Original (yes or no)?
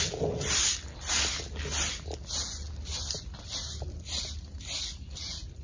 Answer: yes